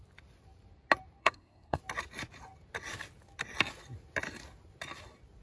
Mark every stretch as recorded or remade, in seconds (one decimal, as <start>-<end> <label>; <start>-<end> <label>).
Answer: 0.0-1.2 recorded; 1.2-1.8 remade; 1.8-5.4 recorded